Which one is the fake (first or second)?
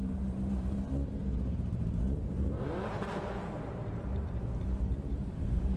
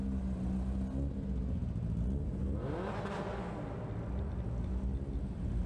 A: first